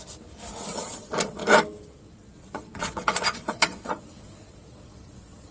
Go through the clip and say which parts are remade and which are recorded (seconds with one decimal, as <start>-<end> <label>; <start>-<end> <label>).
0.0-0.7 recorded; 0.7-1.4 remade; 1.4-2.0 recorded; 2.0-5.5 remade